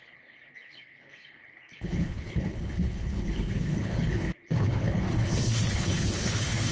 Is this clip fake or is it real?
fake